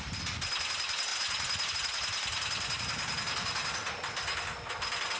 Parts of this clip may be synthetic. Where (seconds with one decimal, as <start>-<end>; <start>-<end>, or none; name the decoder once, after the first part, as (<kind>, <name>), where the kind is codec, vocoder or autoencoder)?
none